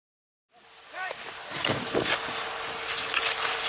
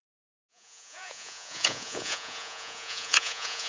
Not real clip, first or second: second